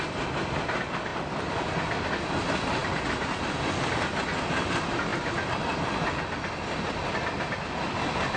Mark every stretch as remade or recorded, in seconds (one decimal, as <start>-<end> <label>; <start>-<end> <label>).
0.0-8.4 recorded